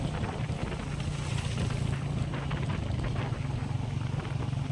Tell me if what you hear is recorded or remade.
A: recorded